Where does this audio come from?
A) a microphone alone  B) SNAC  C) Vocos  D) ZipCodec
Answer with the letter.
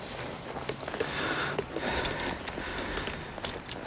A